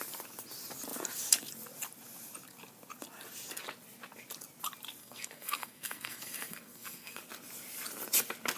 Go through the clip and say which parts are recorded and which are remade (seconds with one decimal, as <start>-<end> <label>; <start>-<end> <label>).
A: 0.0-5.0 recorded; 5.0-7.2 remade; 7.2-8.6 recorded